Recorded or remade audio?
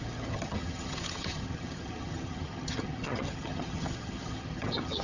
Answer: remade